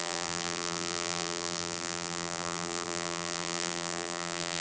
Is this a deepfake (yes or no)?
yes